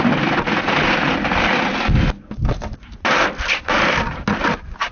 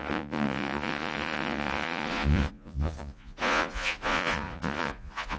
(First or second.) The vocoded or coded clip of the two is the second